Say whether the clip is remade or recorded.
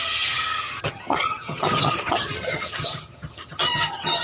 remade